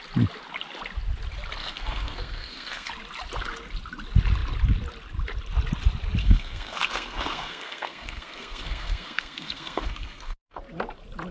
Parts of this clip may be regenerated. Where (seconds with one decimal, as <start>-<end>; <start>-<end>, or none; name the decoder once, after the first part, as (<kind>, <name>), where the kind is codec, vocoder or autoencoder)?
1.6-2.9 (codec, SNAC); 6.2-10.6